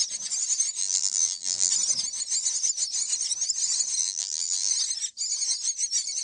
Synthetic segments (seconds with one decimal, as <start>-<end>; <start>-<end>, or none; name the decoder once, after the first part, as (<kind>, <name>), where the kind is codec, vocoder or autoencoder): 0.8-1.7 (vocoder, BigVGAN v2); 4.0-4.7